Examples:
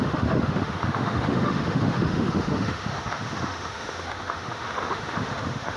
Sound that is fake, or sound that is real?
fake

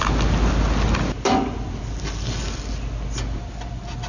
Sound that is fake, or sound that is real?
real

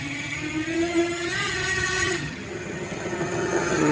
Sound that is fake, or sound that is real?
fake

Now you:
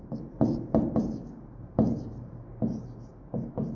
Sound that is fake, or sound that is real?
fake